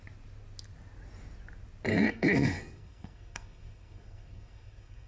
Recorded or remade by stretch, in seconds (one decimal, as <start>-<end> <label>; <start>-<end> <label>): 0.0-1.9 recorded; 1.9-5.1 remade